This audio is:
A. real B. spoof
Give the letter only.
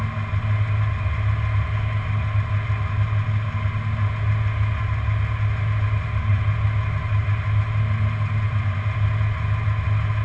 A